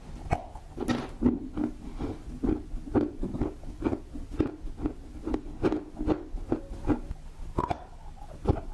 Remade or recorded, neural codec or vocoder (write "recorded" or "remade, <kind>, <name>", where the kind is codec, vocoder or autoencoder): recorded